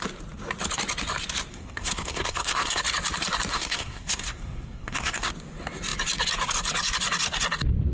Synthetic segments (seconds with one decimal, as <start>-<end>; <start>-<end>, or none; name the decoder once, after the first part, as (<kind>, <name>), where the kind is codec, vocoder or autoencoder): 1.5-2.8 (codec, SNAC); 3.5-5.3